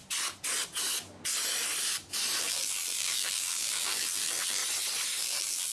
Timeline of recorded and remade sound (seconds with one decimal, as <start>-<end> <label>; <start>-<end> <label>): 0.0-2.4 recorded; 2.4-4.6 remade; 4.6-5.2 recorded; 5.2-5.7 remade